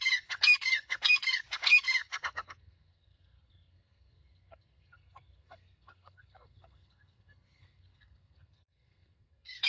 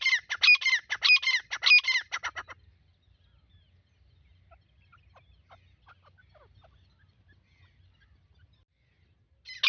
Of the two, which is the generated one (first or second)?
first